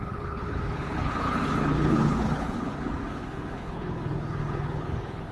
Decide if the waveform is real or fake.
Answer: fake